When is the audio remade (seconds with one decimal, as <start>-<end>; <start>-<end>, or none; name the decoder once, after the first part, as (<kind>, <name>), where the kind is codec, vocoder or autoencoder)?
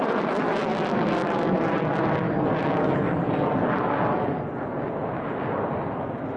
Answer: none